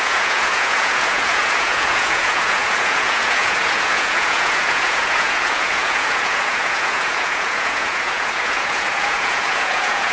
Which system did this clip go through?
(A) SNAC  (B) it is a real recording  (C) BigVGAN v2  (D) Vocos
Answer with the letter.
D